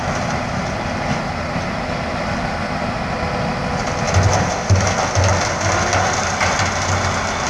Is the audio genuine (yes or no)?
yes